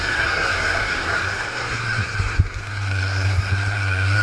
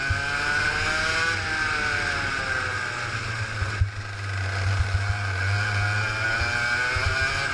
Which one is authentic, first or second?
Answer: second